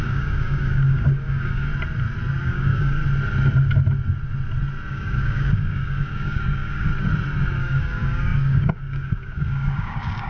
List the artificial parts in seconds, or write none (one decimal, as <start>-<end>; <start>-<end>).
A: 0.0-1.7; 2.4-3.0; 4.9-6.9; 7.6-10.3